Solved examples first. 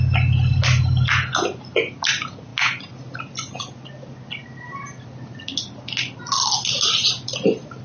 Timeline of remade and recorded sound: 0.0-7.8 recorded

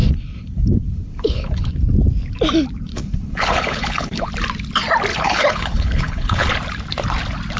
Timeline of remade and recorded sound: 0.0-1.7 remade; 1.7-2.9 recorded; 2.9-4.3 remade; 4.3-5.1 recorded; 5.1-6.5 remade; 6.5-7.6 recorded

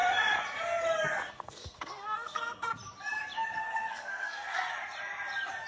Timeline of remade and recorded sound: 0.0-1.3 recorded; 1.3-2.7 remade; 2.7-3.6 recorded; 3.6-4.7 remade; 4.7-5.7 recorded

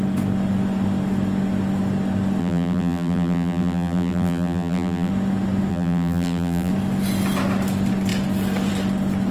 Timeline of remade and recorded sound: 0.0-2.4 recorded; 2.4-5.1 remade; 5.1-5.7 recorded; 5.7-6.7 remade; 6.7-9.3 recorded

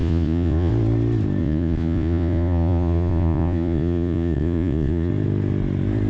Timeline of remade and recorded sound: 0.0-0.7 remade; 0.7-1.4 recorded; 1.4-5.1 remade; 5.1-6.1 recorded

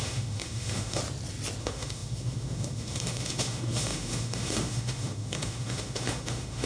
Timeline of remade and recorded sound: 0.0-1.0 remade; 1.0-1.6 recorded; 1.6-6.7 remade

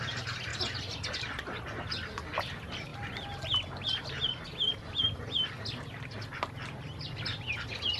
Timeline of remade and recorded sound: 0.0-8.0 recorded